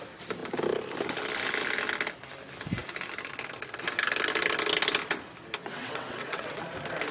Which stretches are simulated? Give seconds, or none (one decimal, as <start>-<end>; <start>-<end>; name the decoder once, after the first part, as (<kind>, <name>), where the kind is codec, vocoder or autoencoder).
5.6-6.6 (vocoder, WaveNeXt)